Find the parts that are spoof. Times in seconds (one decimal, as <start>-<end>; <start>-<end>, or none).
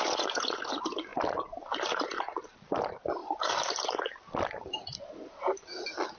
1.1-1.7